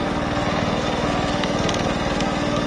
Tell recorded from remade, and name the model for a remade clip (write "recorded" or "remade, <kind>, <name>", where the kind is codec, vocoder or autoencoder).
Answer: remade, codec, SNAC